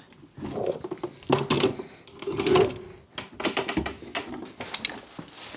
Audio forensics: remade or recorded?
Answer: recorded